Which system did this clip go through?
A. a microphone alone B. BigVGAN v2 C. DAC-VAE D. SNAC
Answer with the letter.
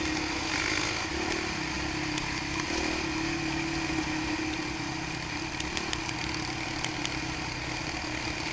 A